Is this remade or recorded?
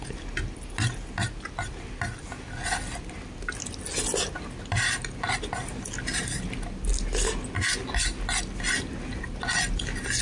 recorded